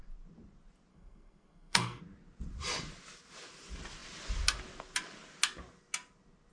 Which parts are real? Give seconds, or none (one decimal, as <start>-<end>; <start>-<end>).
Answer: 0.0-0.9; 2.0-6.5